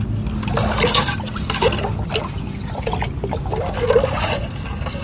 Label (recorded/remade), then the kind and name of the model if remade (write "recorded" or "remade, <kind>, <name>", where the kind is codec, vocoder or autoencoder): recorded